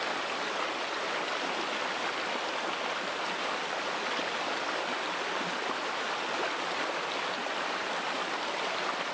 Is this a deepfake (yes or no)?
no